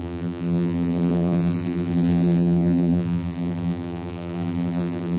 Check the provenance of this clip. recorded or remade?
remade